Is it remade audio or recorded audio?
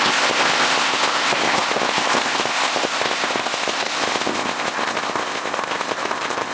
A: remade